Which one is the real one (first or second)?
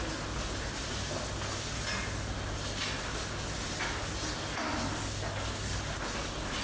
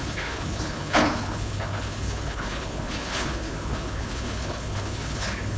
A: first